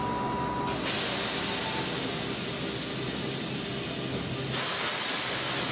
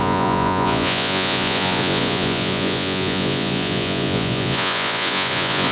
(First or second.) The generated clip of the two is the second